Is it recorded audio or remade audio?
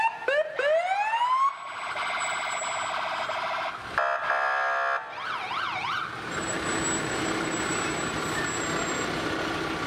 recorded